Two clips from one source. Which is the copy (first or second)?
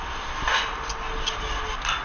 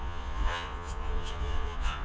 second